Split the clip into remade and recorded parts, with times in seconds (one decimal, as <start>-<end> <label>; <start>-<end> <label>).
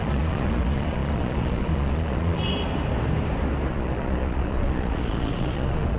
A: 0.0-2.4 remade; 2.4-3.7 recorded; 3.7-6.0 remade